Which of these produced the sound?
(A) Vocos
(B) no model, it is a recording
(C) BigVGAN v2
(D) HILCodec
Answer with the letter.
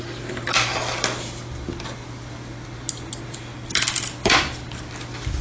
B